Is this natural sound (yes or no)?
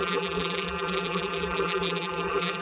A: no